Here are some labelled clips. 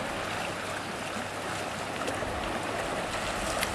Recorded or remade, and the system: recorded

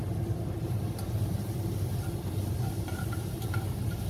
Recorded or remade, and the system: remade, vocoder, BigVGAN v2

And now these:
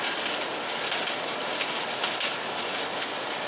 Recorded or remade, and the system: recorded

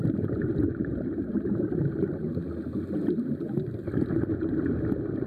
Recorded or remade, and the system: recorded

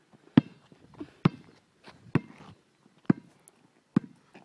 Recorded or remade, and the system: recorded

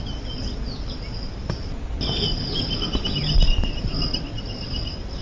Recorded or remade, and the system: recorded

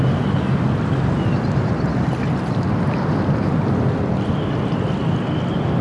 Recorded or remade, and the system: recorded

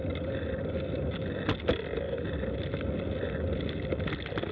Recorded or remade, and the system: recorded